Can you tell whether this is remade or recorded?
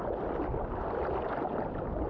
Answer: recorded